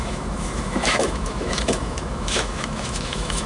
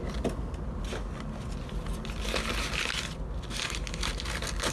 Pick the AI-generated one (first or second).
first